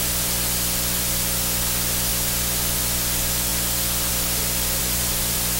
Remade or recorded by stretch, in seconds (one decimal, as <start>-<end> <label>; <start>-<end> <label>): 0.0-4.8 recorded; 4.8-5.6 remade